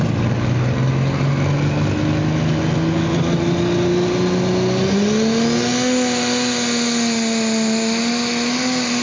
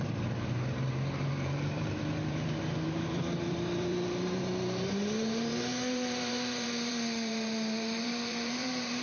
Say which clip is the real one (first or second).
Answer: first